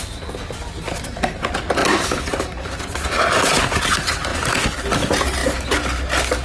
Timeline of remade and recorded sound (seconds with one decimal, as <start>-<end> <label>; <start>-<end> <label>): 0.0-6.4 recorded